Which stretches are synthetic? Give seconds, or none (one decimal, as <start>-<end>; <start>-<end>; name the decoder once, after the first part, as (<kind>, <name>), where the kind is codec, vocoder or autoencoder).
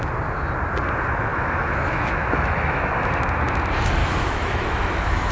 1.3-2.9 (autoencoder, DAC-VAE); 4.0-5.3